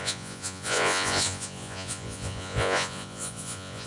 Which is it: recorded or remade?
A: remade